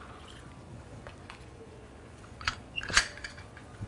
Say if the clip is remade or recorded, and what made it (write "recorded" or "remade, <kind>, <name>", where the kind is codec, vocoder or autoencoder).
remade, vocoder, Vocos